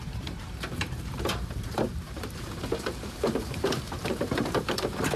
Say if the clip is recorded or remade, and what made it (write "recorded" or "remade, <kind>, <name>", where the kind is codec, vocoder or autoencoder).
remade, vocoder, BigVGAN v2